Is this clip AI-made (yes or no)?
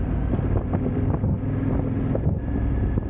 no